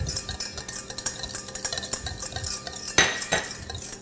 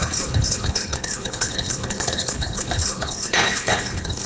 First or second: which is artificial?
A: second